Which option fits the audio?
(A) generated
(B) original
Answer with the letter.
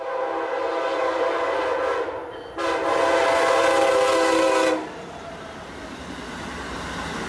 B